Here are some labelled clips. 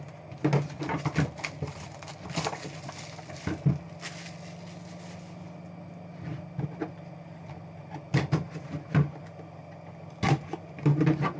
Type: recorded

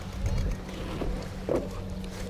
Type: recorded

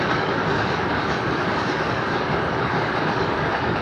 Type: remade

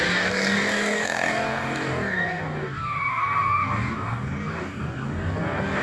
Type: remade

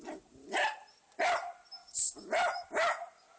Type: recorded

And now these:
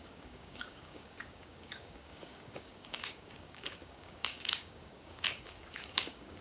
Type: remade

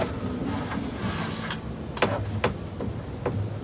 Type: recorded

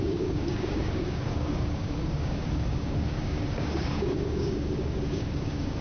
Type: remade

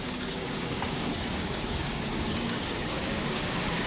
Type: remade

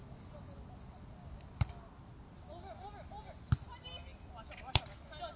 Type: recorded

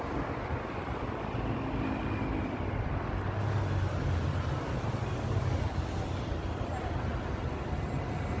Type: recorded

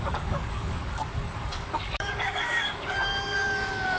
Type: remade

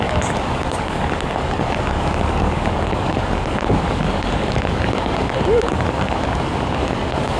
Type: remade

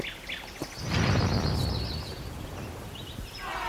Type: recorded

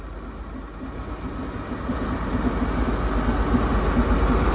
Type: recorded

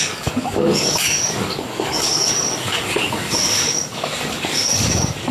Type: remade